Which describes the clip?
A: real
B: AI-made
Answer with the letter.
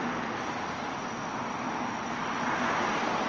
B